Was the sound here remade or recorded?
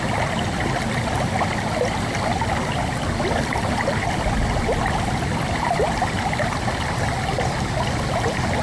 recorded